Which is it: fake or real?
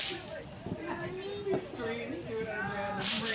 real